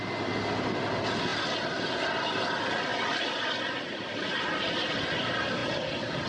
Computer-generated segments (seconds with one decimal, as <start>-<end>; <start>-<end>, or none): 1.3-2.2; 2.9-4.3

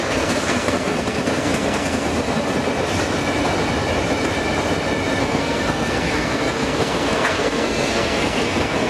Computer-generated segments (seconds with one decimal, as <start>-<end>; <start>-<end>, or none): 0.0-2.1; 5.2-8.9

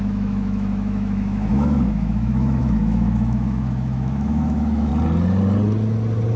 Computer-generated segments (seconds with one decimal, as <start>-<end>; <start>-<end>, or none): 0.0-4.9